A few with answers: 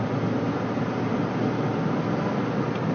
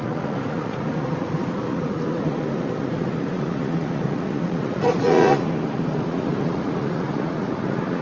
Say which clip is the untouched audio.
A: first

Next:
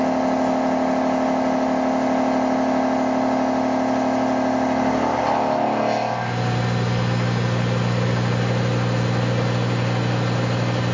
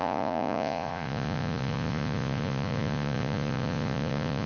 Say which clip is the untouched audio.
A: first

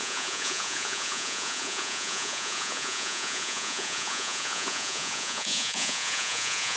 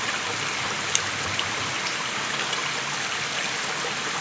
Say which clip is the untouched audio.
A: second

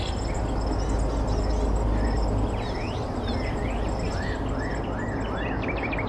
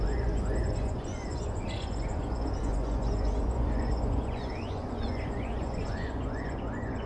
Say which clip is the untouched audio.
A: first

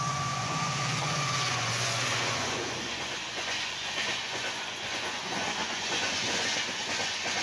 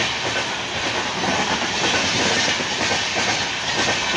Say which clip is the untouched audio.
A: second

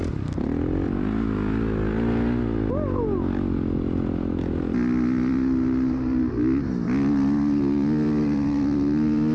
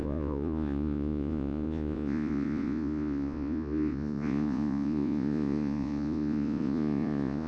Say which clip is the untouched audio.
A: first